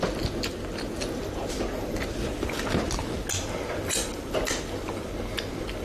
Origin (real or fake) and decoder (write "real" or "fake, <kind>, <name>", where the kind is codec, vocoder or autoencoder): real